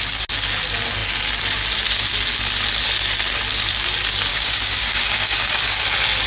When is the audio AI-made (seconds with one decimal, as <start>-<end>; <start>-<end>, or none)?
4.3-5.8